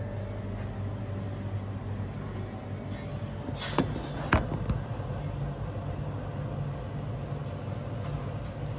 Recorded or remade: recorded